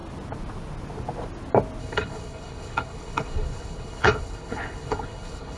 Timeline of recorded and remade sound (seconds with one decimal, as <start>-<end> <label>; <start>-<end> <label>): 0.0-1.8 recorded; 1.8-5.6 remade